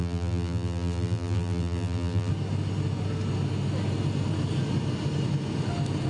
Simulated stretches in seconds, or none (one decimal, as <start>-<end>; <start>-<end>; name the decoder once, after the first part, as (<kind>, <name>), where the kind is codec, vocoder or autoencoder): 0.0-2.3 (vocoder, BigVGAN v2)